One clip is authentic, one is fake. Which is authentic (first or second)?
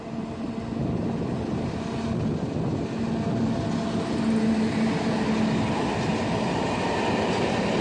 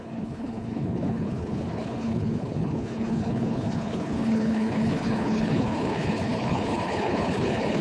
first